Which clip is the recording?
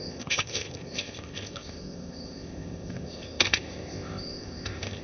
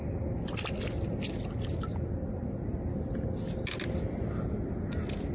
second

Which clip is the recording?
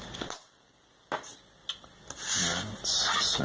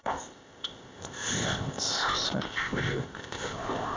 first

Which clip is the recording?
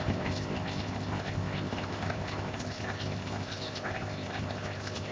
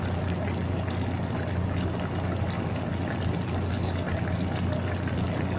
second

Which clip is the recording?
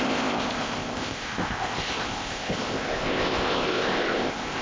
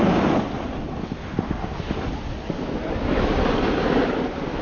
second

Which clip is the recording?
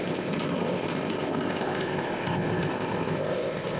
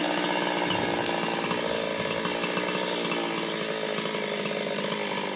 second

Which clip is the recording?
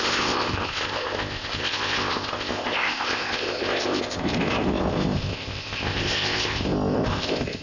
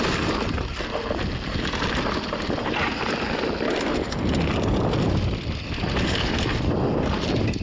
second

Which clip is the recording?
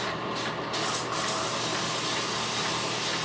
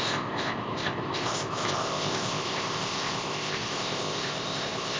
first